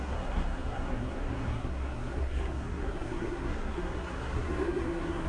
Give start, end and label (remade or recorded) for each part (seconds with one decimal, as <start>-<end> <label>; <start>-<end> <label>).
0.0-5.3 remade